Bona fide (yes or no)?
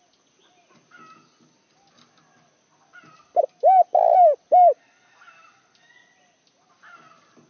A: yes